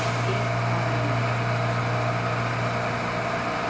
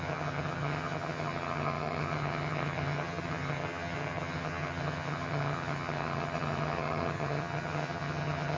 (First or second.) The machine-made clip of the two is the second